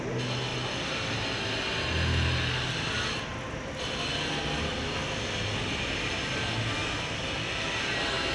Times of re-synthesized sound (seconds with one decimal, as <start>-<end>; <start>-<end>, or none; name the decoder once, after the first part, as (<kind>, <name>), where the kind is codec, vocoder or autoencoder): none